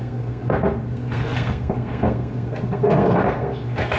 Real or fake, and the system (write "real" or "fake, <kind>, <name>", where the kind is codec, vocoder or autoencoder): fake, codec, SNAC